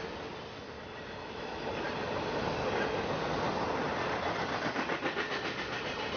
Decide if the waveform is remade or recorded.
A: recorded